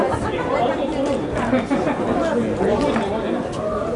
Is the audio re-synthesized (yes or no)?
no